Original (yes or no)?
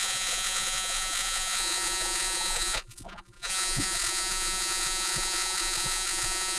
no